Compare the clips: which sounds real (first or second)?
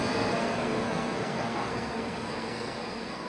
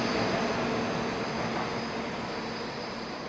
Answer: second